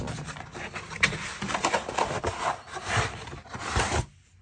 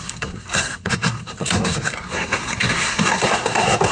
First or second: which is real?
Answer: first